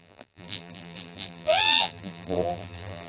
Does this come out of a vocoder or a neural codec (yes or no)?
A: yes